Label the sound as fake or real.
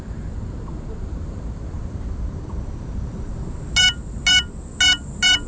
real